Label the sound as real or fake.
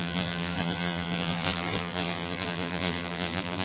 fake